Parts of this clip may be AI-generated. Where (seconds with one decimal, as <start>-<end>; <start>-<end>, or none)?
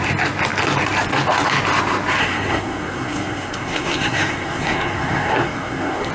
2.2-6.1